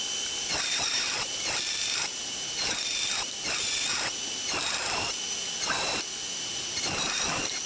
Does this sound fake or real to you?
real